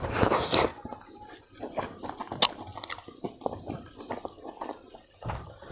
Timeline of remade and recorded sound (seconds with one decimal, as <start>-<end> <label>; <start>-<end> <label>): 0.0-5.7 recorded